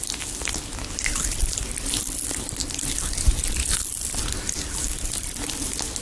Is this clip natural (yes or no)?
yes